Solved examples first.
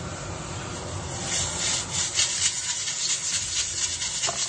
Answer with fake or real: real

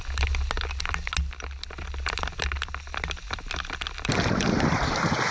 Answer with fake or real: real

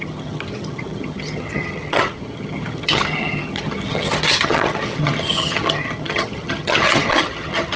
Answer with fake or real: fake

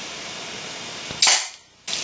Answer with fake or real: real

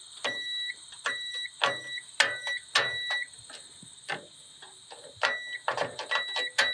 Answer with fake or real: real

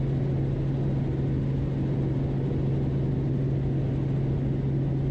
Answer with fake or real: real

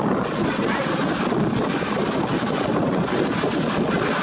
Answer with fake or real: real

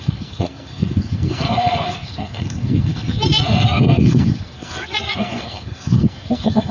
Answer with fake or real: fake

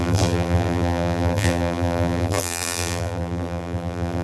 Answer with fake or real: fake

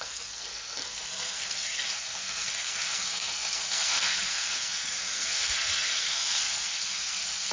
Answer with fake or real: fake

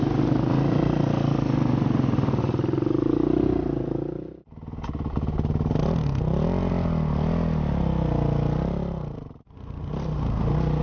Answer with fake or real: real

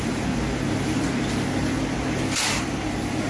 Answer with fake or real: real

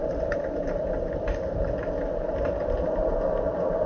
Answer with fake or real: real